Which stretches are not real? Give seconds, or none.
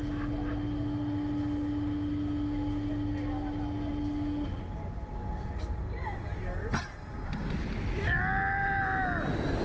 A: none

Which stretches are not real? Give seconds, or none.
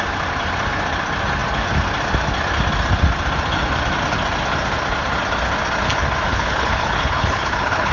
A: 6.3-7.9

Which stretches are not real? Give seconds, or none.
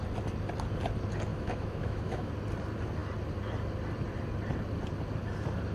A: 1.3-2.3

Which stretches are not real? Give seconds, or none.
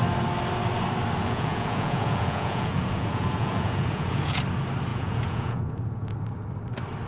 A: 1.2-4.4; 4.9-6.1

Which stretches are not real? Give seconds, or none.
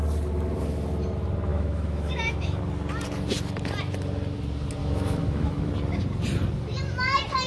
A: 1.5-2.6; 4.8-5.7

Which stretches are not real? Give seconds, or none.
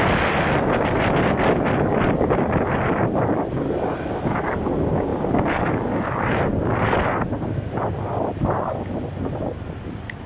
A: none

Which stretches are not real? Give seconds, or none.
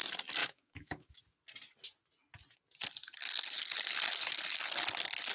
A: 0.4-1.1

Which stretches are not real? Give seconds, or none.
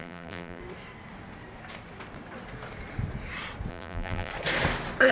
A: 0.0-0.6; 3.7-4.3